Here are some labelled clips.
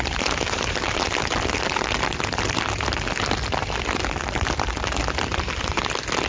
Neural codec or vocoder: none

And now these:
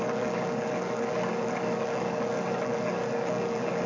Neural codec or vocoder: codec, DAC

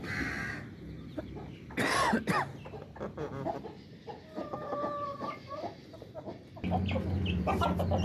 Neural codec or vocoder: none